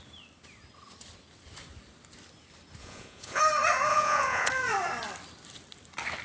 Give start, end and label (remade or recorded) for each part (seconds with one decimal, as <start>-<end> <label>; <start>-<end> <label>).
0.0-2.8 recorded; 2.8-3.4 remade; 3.4-3.9 recorded; 3.9-4.5 remade; 4.5-6.2 recorded